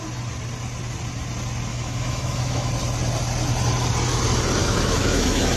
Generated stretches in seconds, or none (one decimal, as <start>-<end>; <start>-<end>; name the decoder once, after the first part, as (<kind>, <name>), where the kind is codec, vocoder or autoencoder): 1.7-2.7 (autoencoder, DAC-VAE); 4.6-5.6